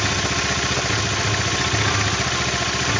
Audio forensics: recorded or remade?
recorded